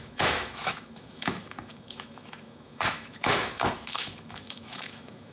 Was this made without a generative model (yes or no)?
no